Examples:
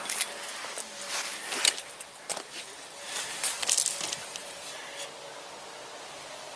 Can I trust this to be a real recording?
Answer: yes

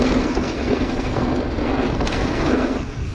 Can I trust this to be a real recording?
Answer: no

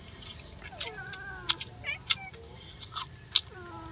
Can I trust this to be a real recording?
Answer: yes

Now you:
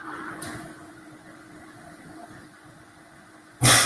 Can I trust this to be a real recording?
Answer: no